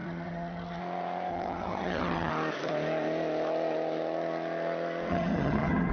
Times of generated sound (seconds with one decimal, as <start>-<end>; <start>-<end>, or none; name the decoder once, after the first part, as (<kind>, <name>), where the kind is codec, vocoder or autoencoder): 0.0-0.8 (vocoder, HiFi-GAN); 1.3-2.3; 5.1-5.9